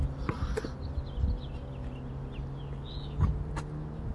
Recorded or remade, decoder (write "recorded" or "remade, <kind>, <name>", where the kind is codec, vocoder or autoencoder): recorded